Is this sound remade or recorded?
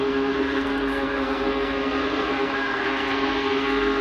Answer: remade